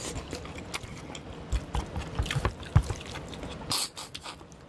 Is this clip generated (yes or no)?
no